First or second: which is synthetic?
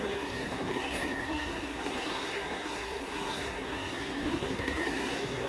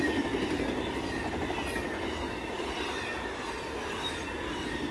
first